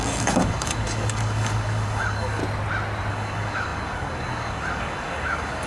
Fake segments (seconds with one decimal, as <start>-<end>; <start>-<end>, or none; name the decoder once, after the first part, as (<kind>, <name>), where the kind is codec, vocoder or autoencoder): 0.0-2.4 (codec, DAC); 3.1-5.7